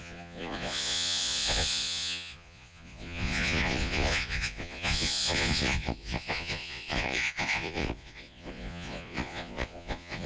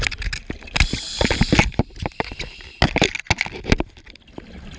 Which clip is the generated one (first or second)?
first